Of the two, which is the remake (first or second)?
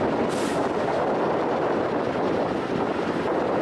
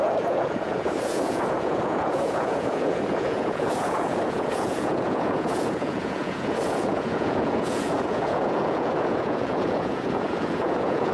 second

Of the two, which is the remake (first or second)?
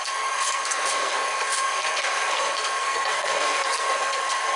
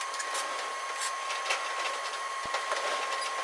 first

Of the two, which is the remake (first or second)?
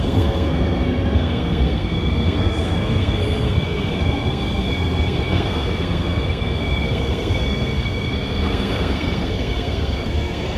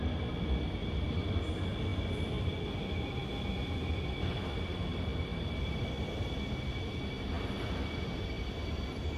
first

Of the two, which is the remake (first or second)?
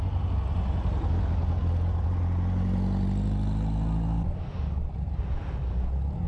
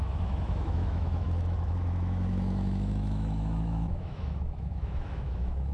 second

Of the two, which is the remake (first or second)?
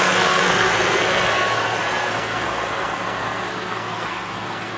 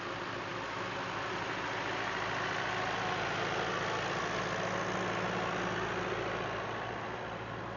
first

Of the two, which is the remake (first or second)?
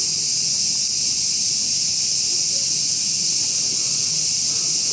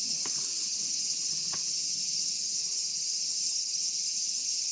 second